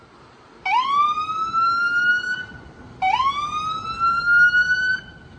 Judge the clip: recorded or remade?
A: recorded